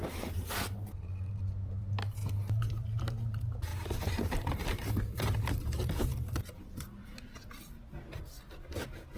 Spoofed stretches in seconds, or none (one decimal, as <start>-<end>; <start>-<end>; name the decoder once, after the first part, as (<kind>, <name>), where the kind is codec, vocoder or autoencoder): 0.0-6.1 (vocoder, BigVGAN v2)